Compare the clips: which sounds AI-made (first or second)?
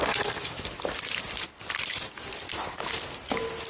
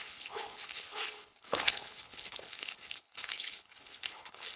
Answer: second